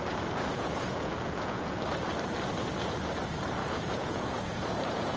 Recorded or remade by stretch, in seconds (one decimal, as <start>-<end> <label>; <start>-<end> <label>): 0.0-0.5 recorded; 0.5-1.8 remade; 1.8-3.6 recorded; 3.6-5.2 remade